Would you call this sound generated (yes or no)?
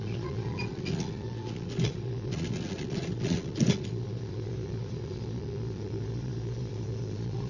yes